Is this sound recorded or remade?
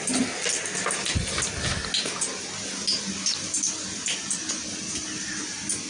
recorded